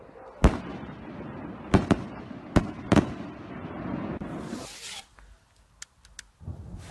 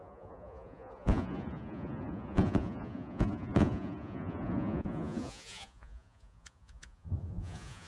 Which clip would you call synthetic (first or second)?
second